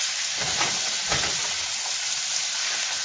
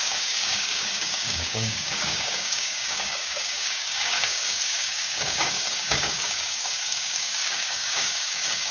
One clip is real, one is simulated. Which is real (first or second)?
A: first